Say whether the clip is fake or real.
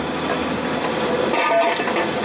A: real